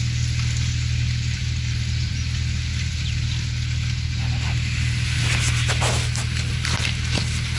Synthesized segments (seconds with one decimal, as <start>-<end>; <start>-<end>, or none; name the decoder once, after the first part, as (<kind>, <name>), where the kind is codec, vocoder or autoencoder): none